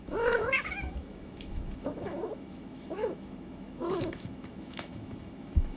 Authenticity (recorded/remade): remade